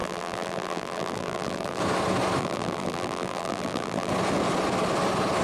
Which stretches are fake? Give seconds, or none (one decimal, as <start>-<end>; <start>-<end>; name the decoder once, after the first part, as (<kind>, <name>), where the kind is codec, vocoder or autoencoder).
0.0-1.8 (vocoder, BigVGAN v2); 2.4-4.1